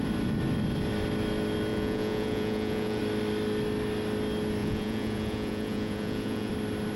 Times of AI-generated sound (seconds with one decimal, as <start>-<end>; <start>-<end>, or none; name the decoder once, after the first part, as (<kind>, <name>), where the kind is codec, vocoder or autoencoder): 1.7-3.0 (vocoder, Vocos); 4.6-6.5